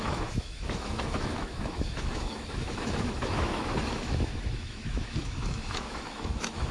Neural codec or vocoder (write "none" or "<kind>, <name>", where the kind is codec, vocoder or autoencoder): autoencoder, DAC-VAE